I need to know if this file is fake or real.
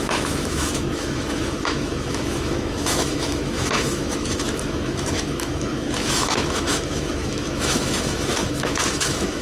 fake